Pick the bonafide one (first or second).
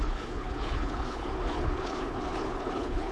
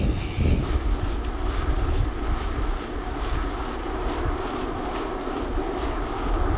second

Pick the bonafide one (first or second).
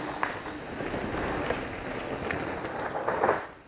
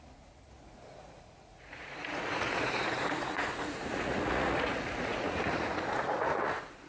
first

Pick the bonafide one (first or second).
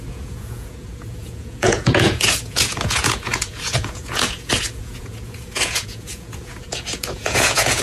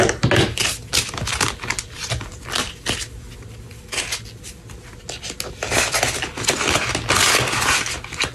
second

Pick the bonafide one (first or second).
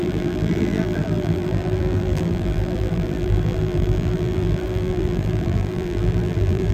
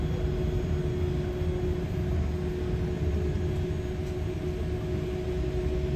second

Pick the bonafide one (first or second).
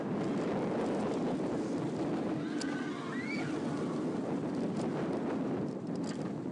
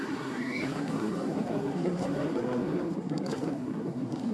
first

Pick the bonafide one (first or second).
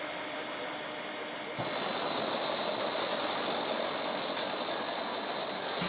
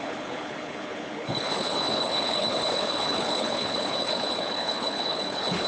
first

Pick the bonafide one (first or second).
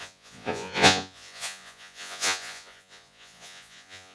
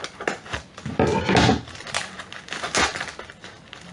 second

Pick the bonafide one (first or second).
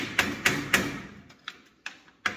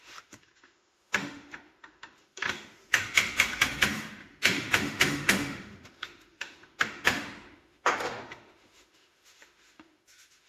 first